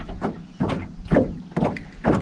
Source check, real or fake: real